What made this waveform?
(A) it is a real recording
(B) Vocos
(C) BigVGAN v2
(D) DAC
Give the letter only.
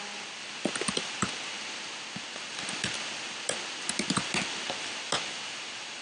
A